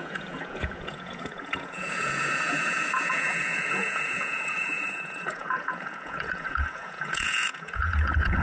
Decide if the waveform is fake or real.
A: fake